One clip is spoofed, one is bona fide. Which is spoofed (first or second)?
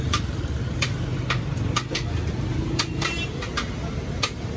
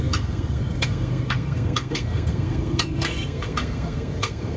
second